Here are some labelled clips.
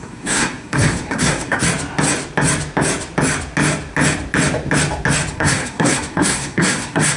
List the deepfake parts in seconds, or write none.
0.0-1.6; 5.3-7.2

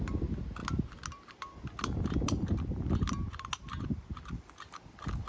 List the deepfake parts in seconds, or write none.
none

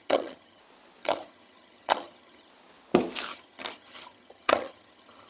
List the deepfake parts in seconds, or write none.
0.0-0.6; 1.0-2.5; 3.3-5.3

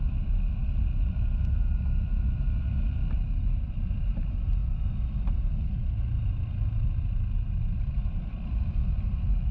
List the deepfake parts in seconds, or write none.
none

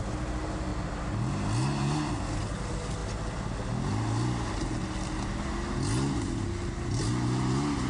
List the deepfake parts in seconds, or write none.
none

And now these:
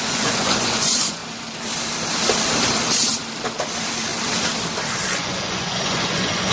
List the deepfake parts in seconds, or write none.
0.0-1.2; 5.1-6.5

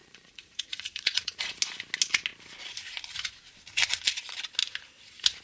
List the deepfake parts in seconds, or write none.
0.0-1.6

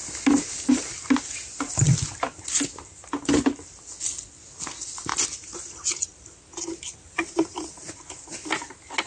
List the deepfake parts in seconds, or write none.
none